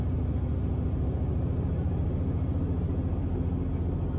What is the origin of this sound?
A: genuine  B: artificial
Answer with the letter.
A